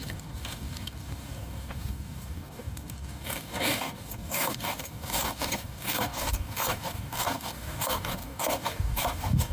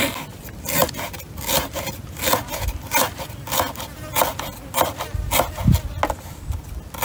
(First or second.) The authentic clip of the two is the second